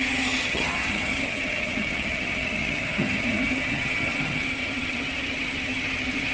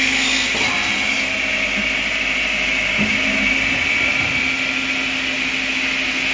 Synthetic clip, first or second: first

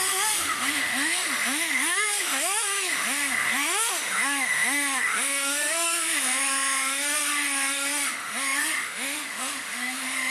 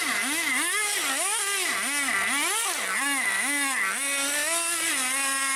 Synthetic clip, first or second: first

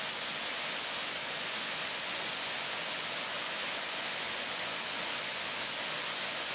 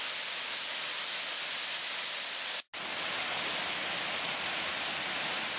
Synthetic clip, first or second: first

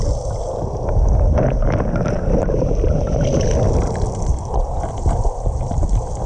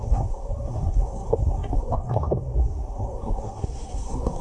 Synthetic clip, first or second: second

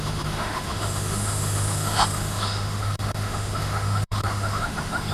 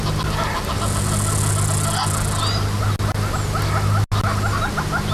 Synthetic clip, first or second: first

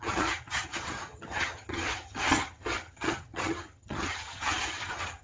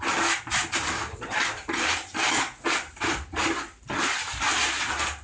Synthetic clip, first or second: first